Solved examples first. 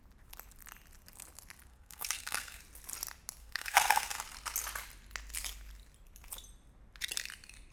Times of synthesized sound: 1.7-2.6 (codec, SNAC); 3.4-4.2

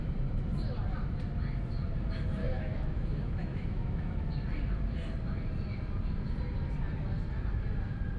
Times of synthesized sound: 2.4-4.2 (autoencoder, DAC-VAE)

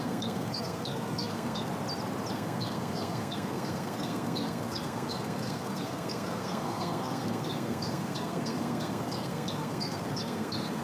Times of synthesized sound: 0.0-1.7 (codec, SNAC); 2.3-10.8

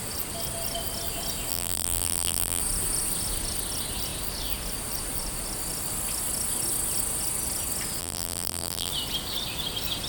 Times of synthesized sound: 1.5-2.6 (vocoder, BigVGAN v2); 8.0-8.9